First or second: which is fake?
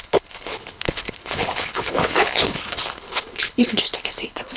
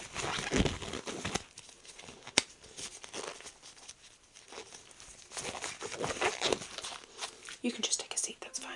first